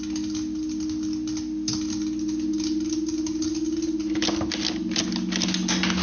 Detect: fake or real real